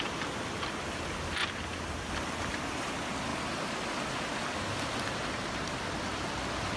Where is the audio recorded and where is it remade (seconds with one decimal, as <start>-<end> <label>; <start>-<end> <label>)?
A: 0.0-1.4 recorded; 1.4-2.1 remade; 2.1-6.8 recorded